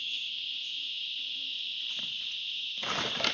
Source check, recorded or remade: recorded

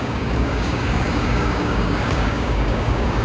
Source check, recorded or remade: remade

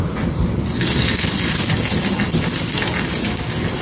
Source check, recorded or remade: recorded